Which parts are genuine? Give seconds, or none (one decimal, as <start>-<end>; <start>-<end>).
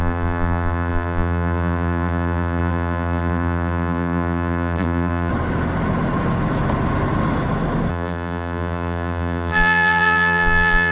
5.3-7.9